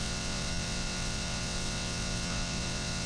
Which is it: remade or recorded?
remade